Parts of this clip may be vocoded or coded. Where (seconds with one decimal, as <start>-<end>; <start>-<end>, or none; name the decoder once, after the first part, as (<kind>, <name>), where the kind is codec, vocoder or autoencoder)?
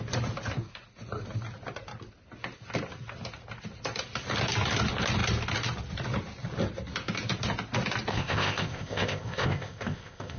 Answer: 8.1-10.4 (codec, ZipCodec)